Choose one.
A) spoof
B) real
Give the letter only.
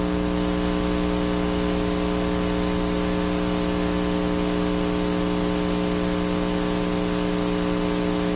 B